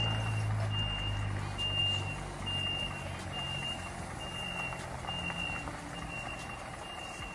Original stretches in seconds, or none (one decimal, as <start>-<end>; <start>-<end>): 0.0-7.3

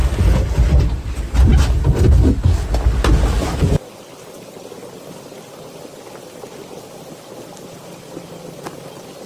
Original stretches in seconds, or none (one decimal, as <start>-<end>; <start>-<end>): 0.0-9.3

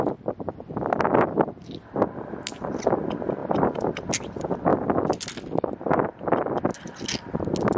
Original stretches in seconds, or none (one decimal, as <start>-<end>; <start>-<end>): 0.0-3.4; 4.1-7.8

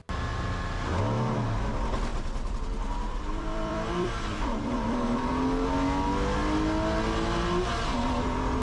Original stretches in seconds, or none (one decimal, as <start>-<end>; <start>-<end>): 0.0-2.1; 2.6-3.1; 5.3-8.6

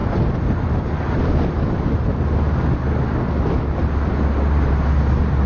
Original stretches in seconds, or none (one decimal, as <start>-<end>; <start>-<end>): 0.7-5.5

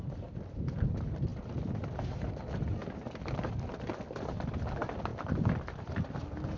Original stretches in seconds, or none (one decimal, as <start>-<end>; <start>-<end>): 0.0-1.3; 2.4-2.8; 3.4-5.1; 5.9-6.6

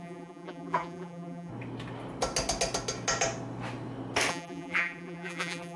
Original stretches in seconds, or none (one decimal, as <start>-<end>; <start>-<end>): 1.5-4.3